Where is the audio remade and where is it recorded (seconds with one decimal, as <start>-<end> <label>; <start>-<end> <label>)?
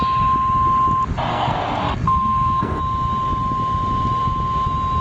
0.0-1.3 recorded; 1.3-2.8 remade; 2.8-5.0 recorded